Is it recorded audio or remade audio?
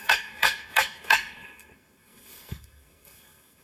remade